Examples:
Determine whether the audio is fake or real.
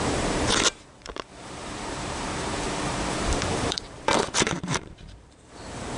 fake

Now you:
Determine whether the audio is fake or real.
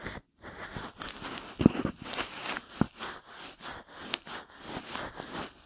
real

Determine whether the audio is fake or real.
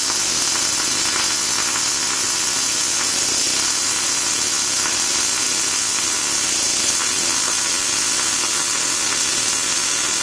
real